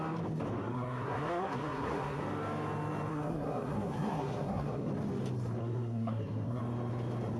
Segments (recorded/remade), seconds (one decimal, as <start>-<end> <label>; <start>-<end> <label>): 0.0-0.6 recorded; 0.6-2.2 remade; 2.2-3.1 recorded; 3.1-4.9 remade; 4.9-5.6 recorded; 5.6-6.6 remade; 6.6-7.4 recorded